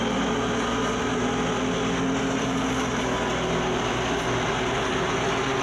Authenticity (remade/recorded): recorded